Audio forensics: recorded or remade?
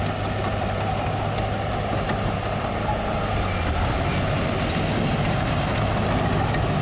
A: recorded